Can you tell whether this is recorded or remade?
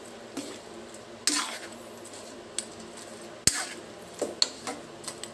recorded